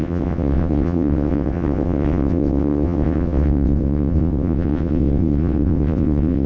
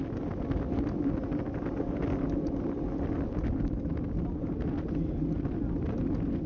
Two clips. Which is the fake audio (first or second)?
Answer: first